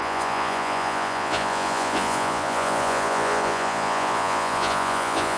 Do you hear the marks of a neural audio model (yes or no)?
yes